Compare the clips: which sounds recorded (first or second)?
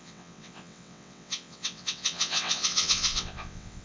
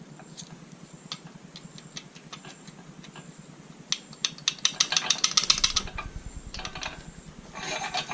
second